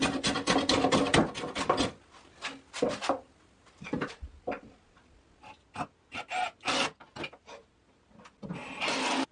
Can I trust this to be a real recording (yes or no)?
yes